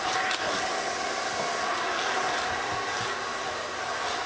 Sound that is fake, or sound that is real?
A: real